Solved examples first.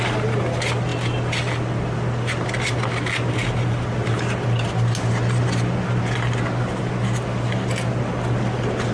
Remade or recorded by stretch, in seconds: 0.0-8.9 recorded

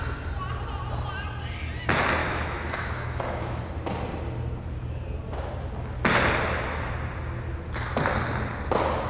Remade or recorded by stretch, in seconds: 0.0-2.2 recorded; 2.2-3.6 remade; 3.6-9.1 recorded